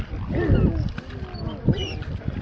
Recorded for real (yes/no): yes